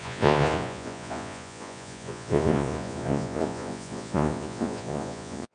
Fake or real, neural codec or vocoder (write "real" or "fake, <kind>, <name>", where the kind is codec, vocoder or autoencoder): fake, vocoder, Vocos